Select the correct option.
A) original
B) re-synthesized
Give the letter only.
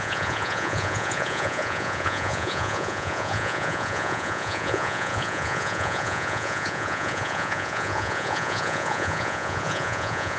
B